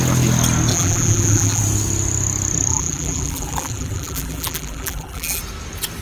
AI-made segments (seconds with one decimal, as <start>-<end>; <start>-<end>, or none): 0.7-1.6; 2.7-5.4